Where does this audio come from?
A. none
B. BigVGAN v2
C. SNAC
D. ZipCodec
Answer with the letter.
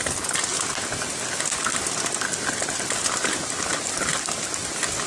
A